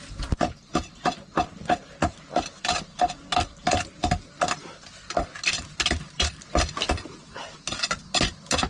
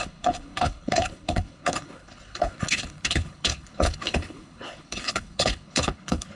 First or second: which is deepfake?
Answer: second